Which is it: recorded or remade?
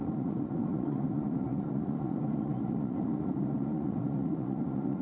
remade